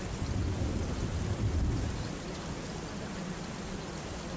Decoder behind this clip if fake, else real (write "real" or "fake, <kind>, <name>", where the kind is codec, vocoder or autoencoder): real